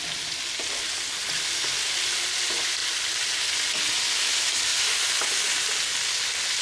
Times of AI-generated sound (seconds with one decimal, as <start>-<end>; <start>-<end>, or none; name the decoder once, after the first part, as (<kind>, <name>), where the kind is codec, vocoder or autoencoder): none